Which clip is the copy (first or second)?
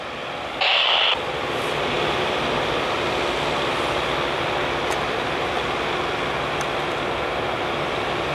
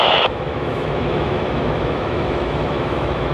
second